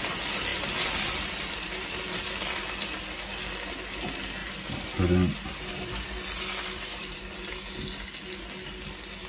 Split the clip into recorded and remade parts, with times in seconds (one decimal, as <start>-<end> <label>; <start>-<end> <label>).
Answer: 0.0-0.5 recorded; 0.5-3.0 remade; 3.0-4.4 recorded; 4.4-7.4 remade; 7.4-9.3 recorded